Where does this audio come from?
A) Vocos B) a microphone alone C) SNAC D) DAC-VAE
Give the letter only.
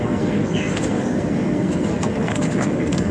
C